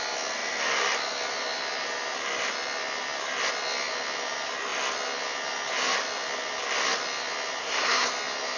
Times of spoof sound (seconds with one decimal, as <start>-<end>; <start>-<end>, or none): 7.6-8.1